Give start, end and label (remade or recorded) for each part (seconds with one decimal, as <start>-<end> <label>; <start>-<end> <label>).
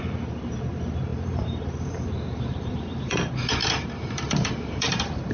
0.0-5.3 remade